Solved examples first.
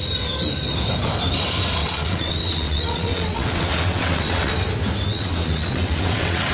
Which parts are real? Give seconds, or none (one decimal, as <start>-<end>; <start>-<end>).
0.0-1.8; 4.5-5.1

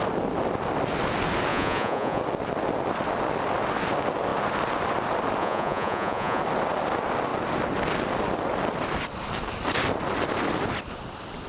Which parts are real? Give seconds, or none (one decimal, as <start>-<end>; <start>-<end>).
0.0-1.5; 2.2-5.4; 6.4-11.5

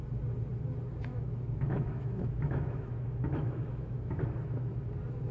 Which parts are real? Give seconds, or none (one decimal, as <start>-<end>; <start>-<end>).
0.0-1.1; 4.2-5.3

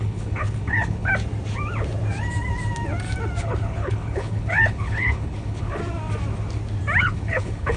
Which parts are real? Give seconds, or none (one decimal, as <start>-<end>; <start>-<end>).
1.1-3.4; 5.8-7.0

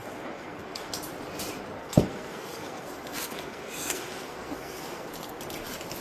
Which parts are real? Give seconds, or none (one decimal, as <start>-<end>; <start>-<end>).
0.9-1.8; 5.4-6.0

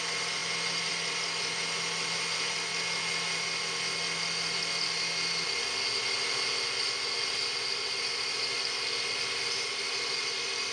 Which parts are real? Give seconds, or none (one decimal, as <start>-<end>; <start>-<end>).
0.0-10.7